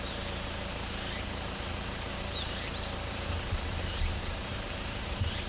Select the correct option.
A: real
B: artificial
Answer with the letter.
B